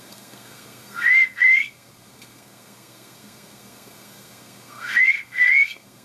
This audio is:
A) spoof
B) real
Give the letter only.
A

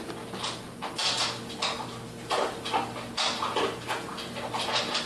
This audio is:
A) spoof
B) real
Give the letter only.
B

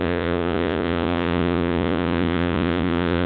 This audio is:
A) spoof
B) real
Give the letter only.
A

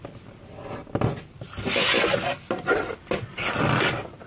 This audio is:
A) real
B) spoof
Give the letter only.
A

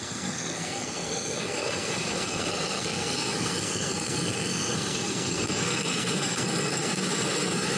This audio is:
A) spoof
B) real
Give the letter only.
A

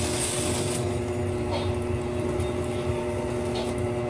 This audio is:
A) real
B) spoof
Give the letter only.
A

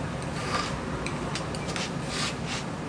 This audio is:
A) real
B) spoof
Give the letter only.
A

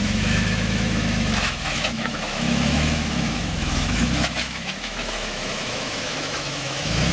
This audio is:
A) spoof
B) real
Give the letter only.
A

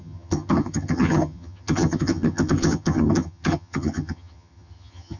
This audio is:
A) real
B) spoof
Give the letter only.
B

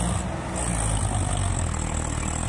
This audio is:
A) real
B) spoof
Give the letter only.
A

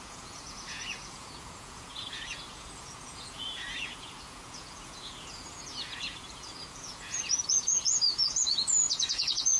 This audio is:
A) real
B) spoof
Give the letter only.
B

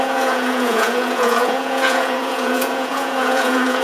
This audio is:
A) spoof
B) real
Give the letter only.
A